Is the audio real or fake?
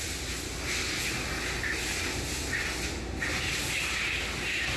real